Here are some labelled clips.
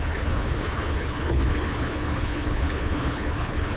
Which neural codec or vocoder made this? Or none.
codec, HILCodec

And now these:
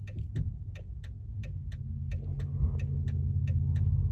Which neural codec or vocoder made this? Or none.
none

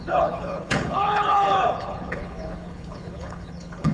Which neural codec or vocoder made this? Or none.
codec, HILCodec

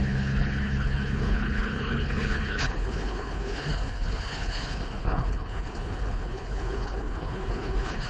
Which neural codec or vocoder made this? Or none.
codec, HILCodec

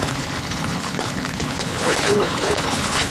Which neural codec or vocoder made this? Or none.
codec, HILCodec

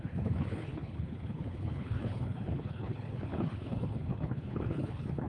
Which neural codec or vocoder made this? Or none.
codec, HILCodec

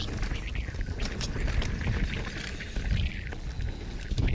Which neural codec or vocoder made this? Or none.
none